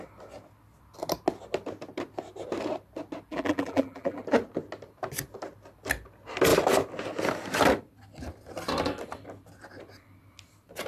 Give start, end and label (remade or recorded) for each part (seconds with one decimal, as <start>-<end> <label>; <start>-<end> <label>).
0.0-3.3 recorded; 3.3-4.2 remade; 4.2-10.9 recorded